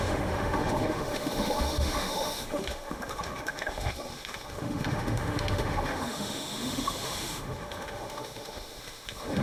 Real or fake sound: fake